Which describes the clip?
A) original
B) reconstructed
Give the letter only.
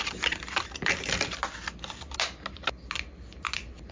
A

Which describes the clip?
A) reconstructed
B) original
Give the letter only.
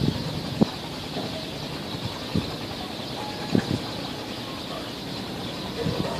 B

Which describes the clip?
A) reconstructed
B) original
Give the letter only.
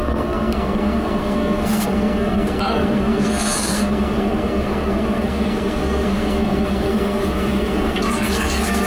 A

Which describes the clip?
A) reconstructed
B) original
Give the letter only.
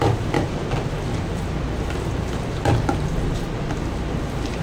B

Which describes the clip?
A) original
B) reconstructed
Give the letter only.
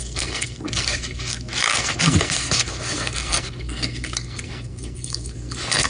B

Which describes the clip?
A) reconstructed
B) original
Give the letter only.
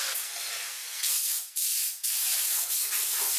A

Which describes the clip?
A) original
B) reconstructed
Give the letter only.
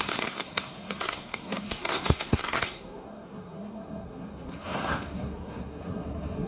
B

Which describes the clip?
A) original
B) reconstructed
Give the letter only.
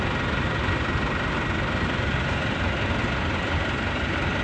A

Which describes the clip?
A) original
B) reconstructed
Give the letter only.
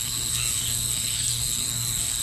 B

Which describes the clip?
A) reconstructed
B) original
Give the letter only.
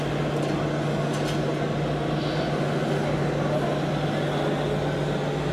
B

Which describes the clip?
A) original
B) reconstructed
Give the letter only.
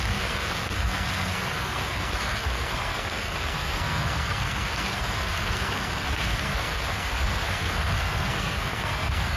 B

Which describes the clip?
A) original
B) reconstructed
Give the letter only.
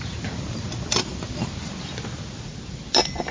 A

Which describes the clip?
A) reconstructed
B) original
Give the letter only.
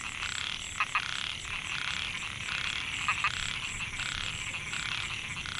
B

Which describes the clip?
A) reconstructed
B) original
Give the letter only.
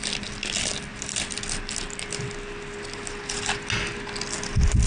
B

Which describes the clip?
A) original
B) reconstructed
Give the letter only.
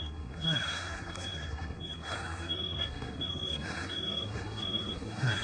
B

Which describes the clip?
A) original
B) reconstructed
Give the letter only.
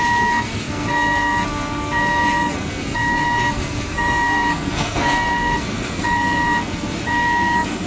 B